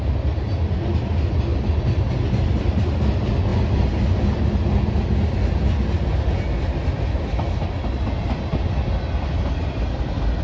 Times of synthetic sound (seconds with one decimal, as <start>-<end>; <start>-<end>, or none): none